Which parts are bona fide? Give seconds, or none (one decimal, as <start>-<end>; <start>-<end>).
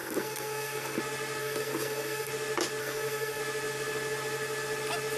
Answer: 1.0-1.4; 2.3-2.8; 3.4-5.2